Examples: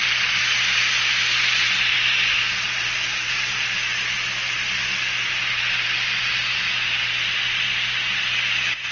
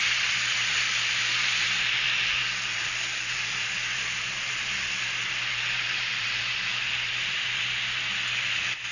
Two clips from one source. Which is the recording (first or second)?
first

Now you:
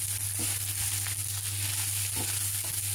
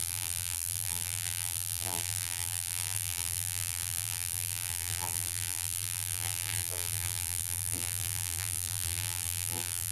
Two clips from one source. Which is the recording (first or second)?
first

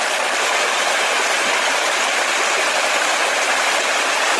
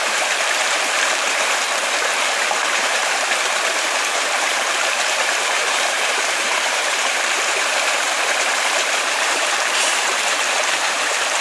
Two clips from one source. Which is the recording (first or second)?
first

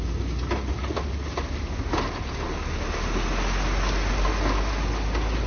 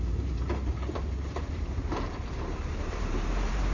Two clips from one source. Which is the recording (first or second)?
first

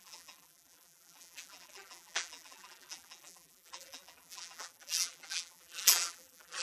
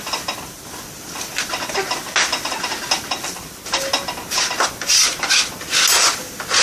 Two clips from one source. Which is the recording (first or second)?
second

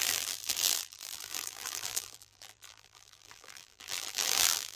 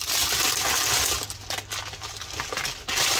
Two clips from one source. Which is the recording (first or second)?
second